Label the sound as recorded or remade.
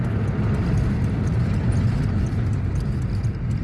recorded